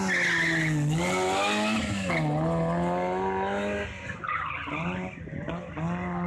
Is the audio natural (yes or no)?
yes